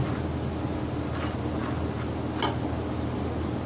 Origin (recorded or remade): recorded